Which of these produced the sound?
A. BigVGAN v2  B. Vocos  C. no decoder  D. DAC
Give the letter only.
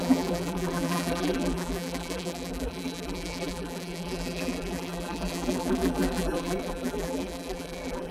A